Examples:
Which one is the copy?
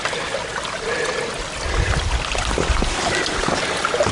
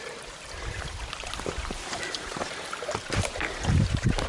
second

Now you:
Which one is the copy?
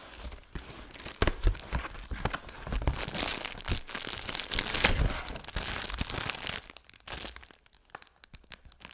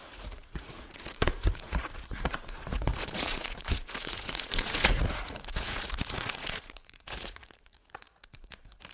second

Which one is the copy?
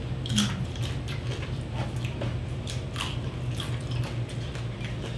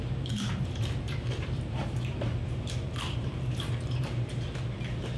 second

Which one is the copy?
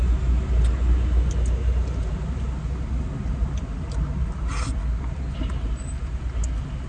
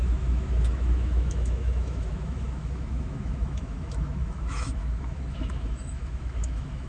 second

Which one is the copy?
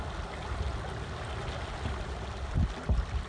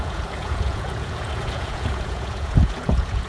second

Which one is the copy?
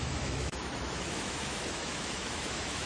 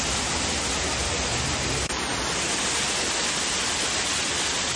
first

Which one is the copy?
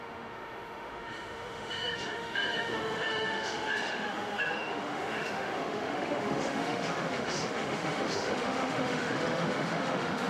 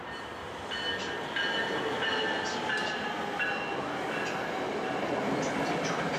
first